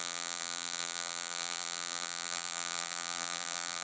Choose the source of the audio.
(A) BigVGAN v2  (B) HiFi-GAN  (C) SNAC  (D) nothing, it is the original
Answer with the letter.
A